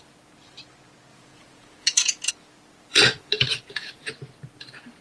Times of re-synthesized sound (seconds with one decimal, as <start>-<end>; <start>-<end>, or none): 1.1-2.3; 2.9-4.1